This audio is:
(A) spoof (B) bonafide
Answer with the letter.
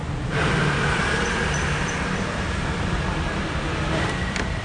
A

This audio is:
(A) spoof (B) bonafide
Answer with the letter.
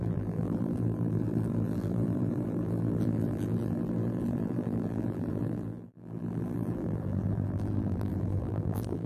A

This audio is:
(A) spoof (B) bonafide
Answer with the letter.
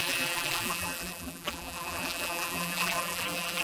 A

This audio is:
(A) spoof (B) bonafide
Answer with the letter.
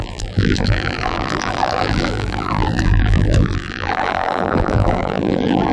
A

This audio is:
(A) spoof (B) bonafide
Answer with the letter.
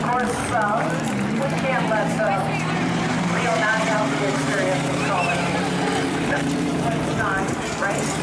A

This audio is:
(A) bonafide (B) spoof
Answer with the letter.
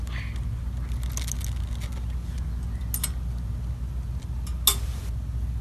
A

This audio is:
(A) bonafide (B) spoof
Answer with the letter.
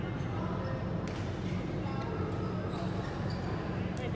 A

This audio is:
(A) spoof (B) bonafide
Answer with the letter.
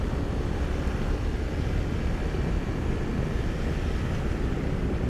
B